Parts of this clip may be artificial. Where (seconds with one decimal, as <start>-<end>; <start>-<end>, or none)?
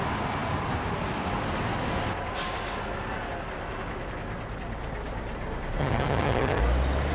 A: 5.8-6.6